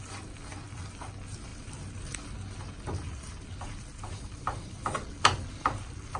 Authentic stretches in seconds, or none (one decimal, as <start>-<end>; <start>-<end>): 0.0-6.2